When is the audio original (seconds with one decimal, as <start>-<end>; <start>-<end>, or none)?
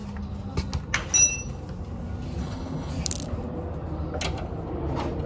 0.0-2.4; 2.9-5.3